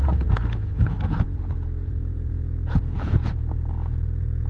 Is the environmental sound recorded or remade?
remade